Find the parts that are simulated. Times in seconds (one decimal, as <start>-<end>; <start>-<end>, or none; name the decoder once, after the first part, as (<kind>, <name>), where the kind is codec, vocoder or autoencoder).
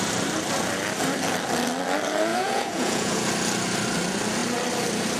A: 2.3-3.3 (vocoder, Vocos)